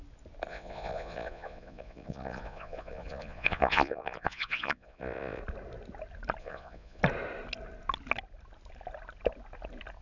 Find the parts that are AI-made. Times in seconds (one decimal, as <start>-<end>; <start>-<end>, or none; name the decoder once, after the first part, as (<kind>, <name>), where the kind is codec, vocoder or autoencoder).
0.5-5.4 (vocoder, Vocos); 6.4-7.0